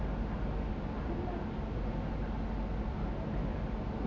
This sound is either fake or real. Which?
real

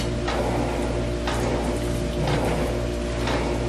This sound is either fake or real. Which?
real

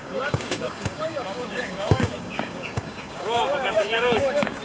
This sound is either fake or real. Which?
fake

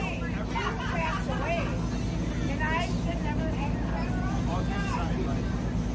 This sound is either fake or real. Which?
real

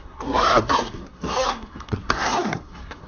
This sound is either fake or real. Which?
fake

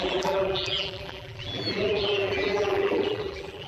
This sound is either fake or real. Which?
fake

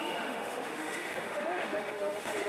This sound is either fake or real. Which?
fake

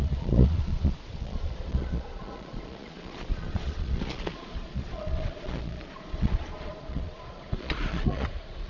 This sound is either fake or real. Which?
fake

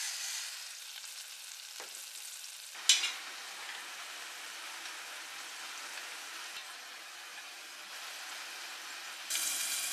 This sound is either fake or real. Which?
real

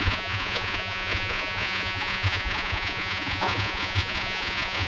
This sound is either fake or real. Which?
fake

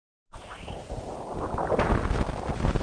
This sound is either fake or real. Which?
real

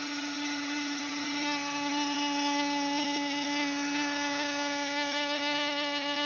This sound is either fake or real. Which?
fake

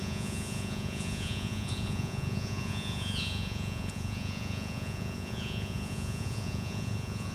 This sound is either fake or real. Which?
fake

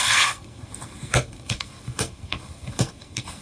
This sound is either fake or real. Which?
fake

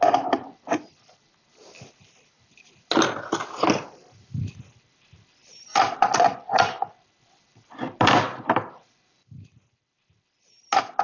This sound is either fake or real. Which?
real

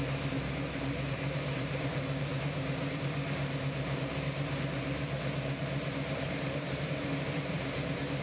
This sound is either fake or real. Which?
fake